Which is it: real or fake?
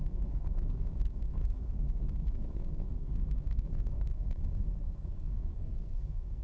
fake